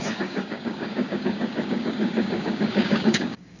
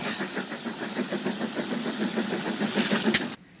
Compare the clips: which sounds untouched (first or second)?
second